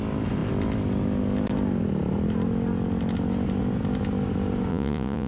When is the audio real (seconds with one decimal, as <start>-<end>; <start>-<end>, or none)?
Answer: 0.0-4.7